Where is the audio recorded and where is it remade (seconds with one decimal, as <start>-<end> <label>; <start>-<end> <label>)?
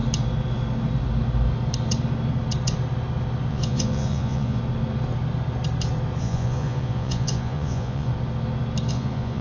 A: 0.0-3.5 recorded; 3.5-4.6 remade; 4.6-6.2 recorded; 6.2-8.1 remade; 8.1-8.9 recorded; 8.9-9.4 remade